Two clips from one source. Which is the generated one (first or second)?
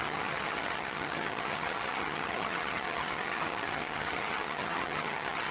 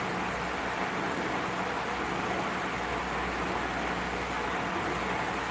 first